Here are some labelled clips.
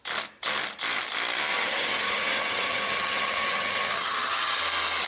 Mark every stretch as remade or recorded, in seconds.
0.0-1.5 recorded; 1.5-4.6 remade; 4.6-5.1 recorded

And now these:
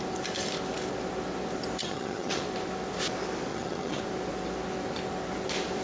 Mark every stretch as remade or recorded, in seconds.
0.0-1.8 recorded; 1.8-2.4 remade; 2.4-3.5 recorded; 3.5-4.0 remade; 4.0-5.8 recorded

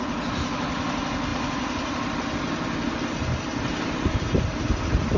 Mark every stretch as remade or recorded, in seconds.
0.0-5.2 recorded